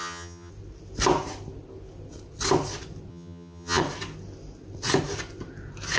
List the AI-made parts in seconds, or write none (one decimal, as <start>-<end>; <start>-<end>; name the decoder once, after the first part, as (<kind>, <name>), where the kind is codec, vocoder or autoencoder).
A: 0.0-0.5 (vocoder, HiFi-GAN); 3.1-3.8